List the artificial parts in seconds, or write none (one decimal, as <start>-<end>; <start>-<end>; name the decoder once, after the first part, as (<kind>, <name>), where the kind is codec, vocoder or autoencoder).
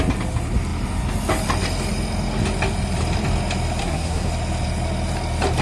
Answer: 3.8-4.3 (codec, SNAC)